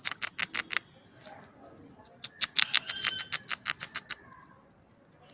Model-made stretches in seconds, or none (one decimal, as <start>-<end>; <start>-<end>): none